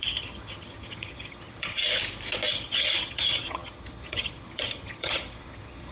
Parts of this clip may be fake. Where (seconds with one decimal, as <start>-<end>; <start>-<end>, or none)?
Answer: 0.0-1.8; 2.5-5.9